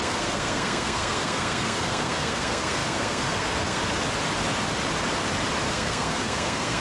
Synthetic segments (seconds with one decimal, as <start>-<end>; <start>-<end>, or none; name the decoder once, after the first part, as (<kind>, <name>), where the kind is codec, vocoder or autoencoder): 0.0-3.8 (codec, SNAC); 5.7-6.8